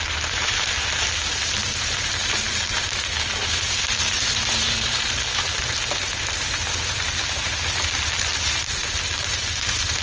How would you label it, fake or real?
fake